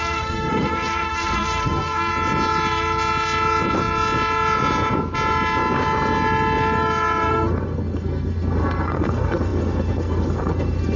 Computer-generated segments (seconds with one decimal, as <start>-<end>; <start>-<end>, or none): 0.0-2.1; 7.3-11.0